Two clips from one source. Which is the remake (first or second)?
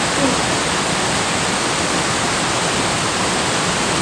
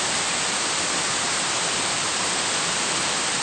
second